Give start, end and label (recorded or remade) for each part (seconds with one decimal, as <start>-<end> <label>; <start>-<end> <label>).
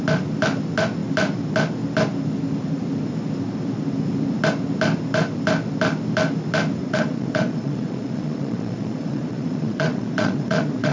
0.0-6.8 recorded; 6.8-10.9 remade